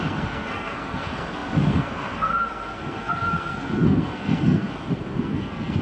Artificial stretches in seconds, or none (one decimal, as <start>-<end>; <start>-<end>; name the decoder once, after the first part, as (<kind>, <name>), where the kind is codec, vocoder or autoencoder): 0.0-5.8 (codec, SNAC)